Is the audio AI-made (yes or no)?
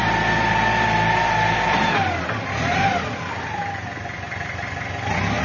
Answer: no